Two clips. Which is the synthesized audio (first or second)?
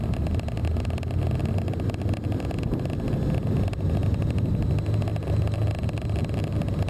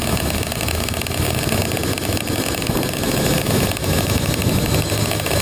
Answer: second